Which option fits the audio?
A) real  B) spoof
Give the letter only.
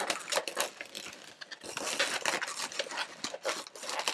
A